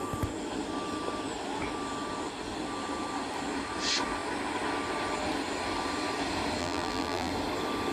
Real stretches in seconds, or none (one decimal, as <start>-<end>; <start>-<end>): 0.0-6.6; 7.3-7.9